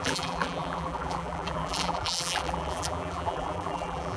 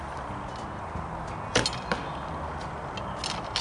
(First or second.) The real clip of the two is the second